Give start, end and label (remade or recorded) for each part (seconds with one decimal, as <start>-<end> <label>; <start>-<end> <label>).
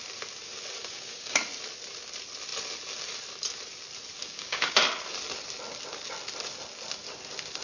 0.0-0.8 recorded; 0.8-1.4 remade; 1.4-4.2 recorded; 4.2-4.8 remade; 4.8-7.6 recorded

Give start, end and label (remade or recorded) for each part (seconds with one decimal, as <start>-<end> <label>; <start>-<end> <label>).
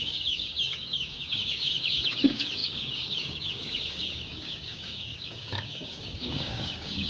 0.0-7.1 remade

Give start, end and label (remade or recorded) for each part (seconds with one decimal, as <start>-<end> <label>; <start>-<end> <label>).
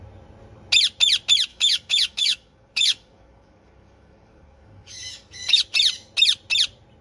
0.0-1.5 recorded; 1.5-5.6 remade; 5.6-7.0 recorded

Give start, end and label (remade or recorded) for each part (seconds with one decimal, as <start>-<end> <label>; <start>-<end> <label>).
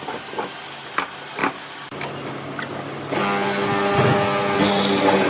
0.0-5.3 recorded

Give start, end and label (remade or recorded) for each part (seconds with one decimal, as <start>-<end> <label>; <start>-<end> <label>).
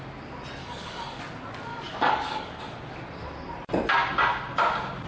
0.0-0.6 recorded; 0.6-1.2 remade; 1.2-1.7 recorded; 1.7-2.6 remade; 2.6-5.1 recorded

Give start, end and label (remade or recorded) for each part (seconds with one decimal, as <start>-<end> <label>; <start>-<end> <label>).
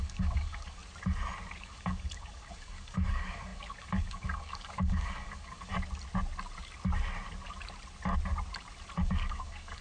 0.0-0.8 remade; 0.8-1.6 recorded; 1.6-5.7 remade; 5.7-9.0 recorded; 9.0-9.8 remade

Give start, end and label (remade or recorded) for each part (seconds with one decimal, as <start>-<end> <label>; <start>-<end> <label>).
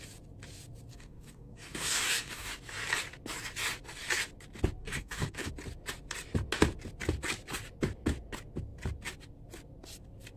0.0-0.9 recorded; 0.9-2.5 remade; 2.5-4.8 recorded; 4.8-5.5 remade; 5.5-10.4 recorded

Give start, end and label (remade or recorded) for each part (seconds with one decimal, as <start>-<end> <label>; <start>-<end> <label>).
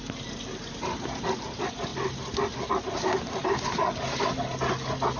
0.0-5.2 recorded